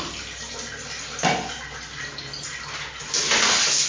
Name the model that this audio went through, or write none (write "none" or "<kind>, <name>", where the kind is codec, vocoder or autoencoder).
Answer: none